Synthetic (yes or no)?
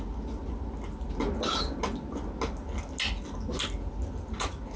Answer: no